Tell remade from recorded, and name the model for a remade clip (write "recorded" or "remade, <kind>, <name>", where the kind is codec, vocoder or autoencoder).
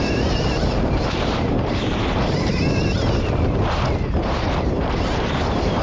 remade, vocoder, BigVGAN v2